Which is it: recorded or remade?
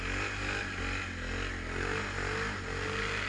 recorded